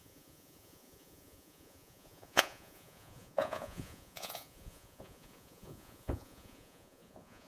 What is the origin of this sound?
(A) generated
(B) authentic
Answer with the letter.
A